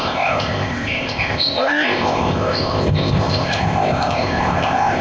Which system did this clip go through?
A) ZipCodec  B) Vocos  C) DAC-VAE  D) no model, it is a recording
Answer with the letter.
A